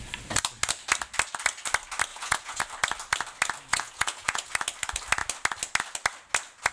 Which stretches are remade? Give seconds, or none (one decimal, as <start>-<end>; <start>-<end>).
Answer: 2.1-2.6; 3.7-4.5

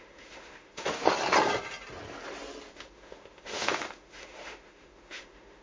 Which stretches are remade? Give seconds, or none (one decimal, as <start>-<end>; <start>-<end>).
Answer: 0.0-1.1; 2.7-5.6

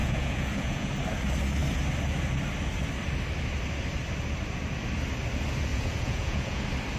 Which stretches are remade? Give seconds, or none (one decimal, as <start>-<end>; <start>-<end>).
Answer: 0.0-0.9; 5.7-6.6

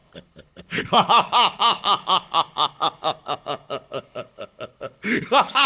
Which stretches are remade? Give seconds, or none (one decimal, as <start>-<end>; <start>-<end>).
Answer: 0.0-5.7

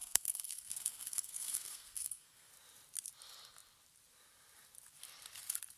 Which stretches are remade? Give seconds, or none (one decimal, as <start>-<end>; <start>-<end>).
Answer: 0.0-2.5

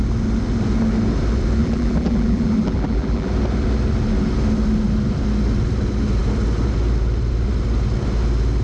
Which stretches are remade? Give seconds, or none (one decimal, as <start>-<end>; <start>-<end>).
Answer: 1.6-3.3